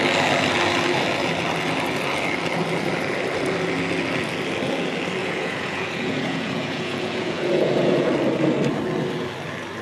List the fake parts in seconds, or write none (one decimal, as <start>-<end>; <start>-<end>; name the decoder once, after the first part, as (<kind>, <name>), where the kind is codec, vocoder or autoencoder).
5.2-8.1 (vocoder, Vocos)